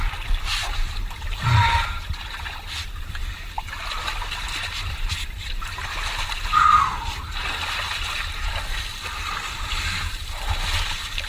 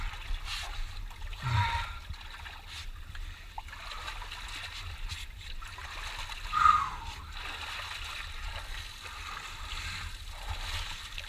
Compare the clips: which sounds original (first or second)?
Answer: second